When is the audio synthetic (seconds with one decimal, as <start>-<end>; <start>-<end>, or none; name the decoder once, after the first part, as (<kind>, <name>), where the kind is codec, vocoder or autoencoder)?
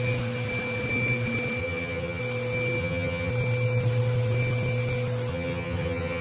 1.6-2.2 (vocoder, HiFi-GAN); 2.8-3.3; 5.3-6.2